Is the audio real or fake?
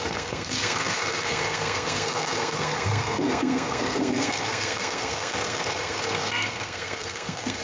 fake